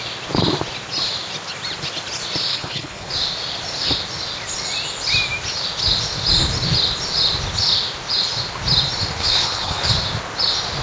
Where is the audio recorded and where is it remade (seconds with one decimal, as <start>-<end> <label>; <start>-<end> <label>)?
0.0-2.5 recorded; 2.5-3.1 remade; 3.1-9.2 recorded; 9.2-9.9 remade; 9.9-10.8 recorded